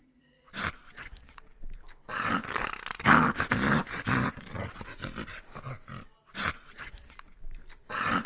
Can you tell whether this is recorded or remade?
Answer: recorded